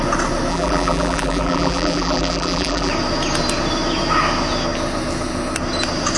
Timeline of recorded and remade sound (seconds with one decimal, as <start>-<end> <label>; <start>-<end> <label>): 0.0-0.5 recorded; 0.5-2.9 remade; 2.9-6.2 recorded